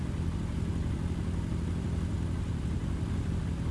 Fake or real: real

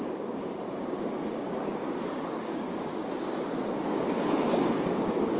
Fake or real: fake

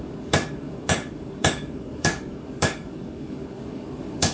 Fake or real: fake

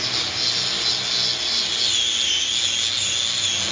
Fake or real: real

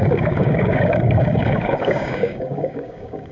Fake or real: fake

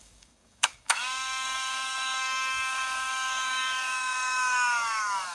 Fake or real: fake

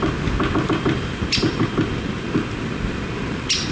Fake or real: real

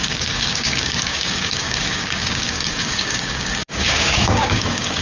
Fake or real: fake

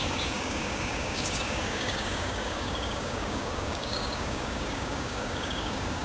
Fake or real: fake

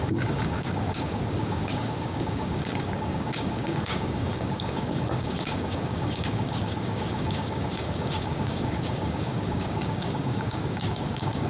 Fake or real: fake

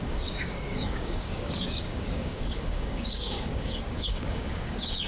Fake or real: fake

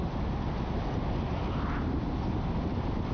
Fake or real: real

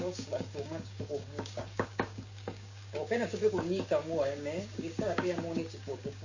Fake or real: fake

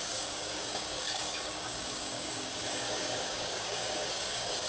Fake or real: fake